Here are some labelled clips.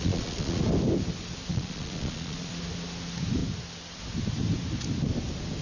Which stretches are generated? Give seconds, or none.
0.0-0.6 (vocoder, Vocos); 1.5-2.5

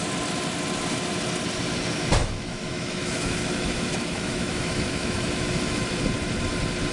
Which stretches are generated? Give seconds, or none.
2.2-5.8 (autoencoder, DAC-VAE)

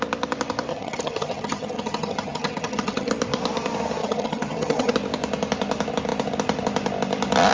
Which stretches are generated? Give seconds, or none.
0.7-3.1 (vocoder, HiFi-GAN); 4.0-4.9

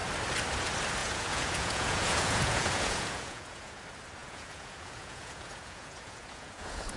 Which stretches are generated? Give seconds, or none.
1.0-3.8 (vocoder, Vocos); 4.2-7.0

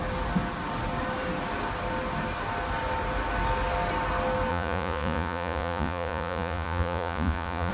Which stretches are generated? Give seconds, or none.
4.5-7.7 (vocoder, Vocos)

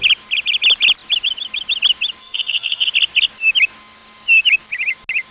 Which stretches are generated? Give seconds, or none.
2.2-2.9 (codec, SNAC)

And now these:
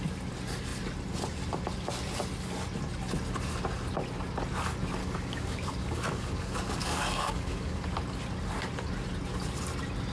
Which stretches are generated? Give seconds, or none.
5.0-7.9 (codec, DAC)